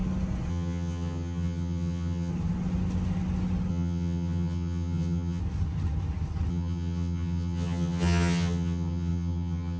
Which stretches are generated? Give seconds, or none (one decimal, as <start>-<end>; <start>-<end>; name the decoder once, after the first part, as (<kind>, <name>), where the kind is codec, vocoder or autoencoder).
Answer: 0.5-2.3 (vocoder, HiFi-GAN); 3.7-5.4; 6.5-9.8